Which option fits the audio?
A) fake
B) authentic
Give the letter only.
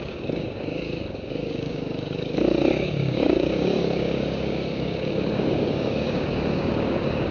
A